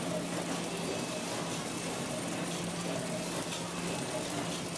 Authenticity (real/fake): real